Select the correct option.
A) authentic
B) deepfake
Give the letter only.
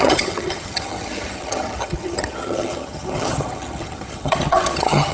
B